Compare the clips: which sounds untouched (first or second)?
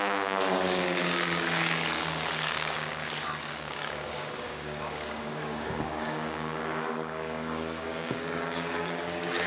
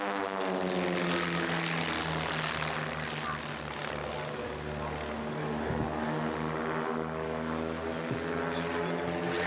second